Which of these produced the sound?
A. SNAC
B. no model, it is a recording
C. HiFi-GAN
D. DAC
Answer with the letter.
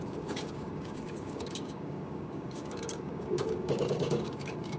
D